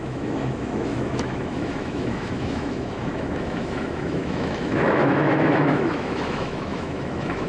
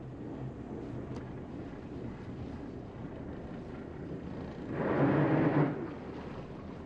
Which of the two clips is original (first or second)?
second